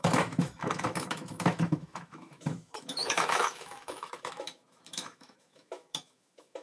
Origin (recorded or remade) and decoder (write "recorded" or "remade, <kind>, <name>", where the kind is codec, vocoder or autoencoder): remade, autoencoder, DAC-VAE